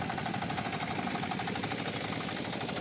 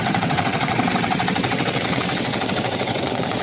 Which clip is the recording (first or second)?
first